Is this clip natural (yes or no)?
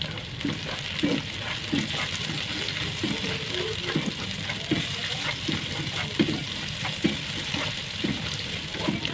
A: yes